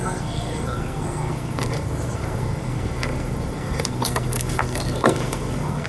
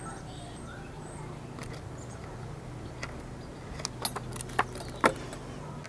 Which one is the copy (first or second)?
first